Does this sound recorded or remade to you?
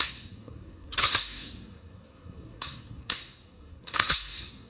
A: remade